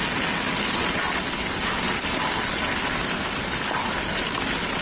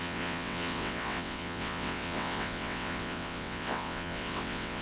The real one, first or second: first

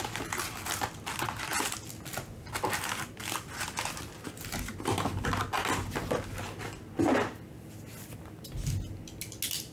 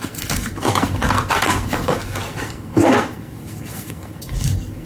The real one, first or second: first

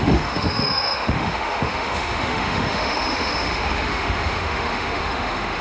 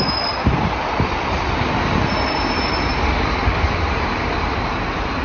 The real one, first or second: second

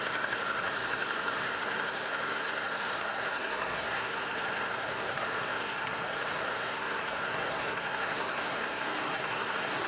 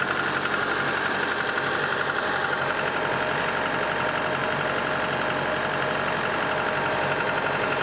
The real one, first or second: second